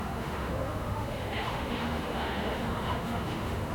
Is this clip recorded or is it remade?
remade